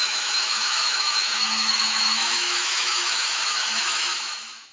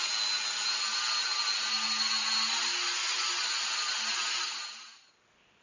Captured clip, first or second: second